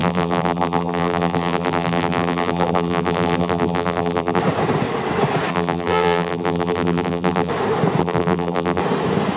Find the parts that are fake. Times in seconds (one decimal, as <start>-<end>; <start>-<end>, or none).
0.0-4.4; 5.5-7.5; 8.0-8.8